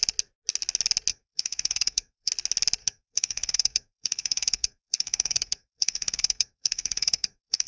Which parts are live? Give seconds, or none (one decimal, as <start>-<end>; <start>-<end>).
0.0-1.1; 2.3-2.8